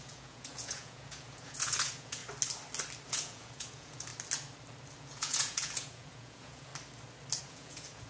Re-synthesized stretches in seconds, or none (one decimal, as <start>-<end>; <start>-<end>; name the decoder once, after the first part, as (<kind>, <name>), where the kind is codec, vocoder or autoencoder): 0.0-2.2 (vocoder, Vocos); 3.1-4.1; 5.0-6.7; 7.4-8.1